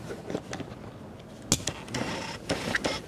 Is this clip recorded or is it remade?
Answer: recorded